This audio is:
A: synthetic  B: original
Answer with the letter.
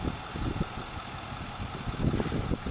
B